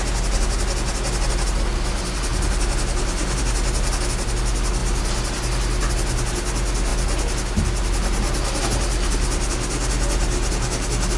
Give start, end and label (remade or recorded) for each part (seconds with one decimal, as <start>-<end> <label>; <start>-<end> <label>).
0.0-11.2 recorded